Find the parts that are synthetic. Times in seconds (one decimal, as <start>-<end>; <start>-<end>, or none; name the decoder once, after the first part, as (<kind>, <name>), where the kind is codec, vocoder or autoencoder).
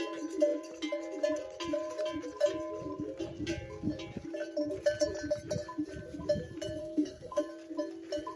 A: 6.8-7.4 (codec, SNAC)